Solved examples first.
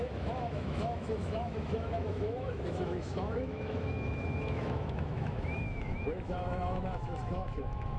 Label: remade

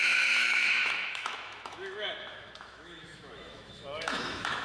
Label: remade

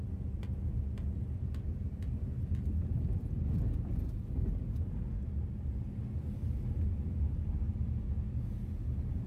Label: recorded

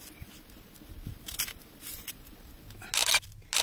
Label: recorded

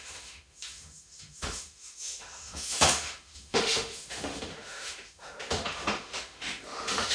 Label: remade